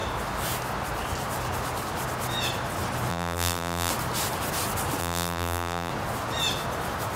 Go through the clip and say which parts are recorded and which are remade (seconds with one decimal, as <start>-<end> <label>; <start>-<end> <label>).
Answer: 0.0-3.1 recorded; 3.1-3.9 remade; 3.9-5.0 recorded; 5.0-5.9 remade; 5.9-7.2 recorded